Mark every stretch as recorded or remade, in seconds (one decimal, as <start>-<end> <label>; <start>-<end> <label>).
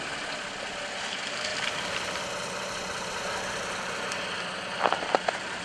0.0-5.6 recorded